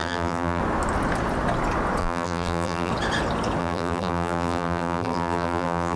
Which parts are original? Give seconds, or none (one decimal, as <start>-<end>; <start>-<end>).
0.6-2.0; 2.9-3.6